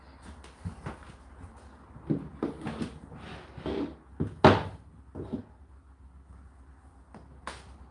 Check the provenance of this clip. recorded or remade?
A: recorded